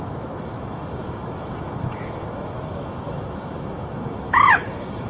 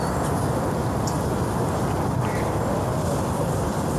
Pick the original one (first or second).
second